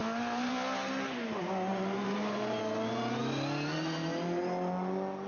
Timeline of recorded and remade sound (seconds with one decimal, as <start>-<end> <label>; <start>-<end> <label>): 0.0-0.5 remade; 0.5-1.7 recorded; 1.7-2.6 remade; 2.6-5.3 recorded